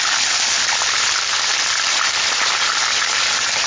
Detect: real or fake real